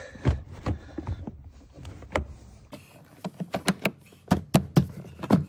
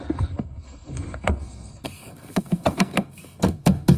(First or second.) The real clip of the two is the first